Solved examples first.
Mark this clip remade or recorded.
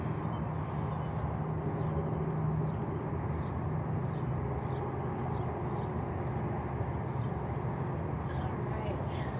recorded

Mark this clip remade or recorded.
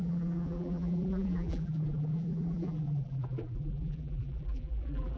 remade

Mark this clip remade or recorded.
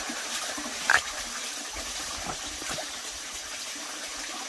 remade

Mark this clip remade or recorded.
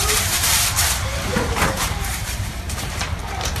remade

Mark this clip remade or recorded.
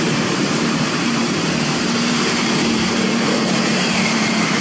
remade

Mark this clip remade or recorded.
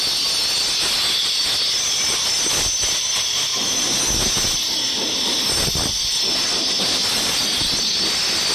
recorded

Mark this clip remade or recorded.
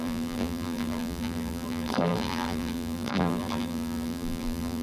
remade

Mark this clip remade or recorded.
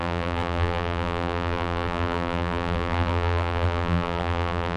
remade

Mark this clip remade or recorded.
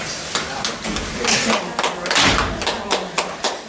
recorded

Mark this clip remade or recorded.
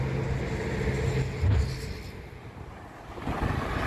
recorded